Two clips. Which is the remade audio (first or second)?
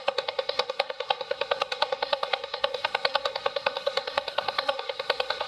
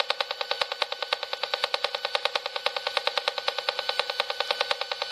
first